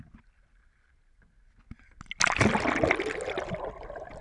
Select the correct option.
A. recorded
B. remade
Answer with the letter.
A